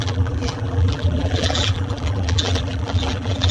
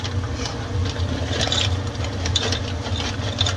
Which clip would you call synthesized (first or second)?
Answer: first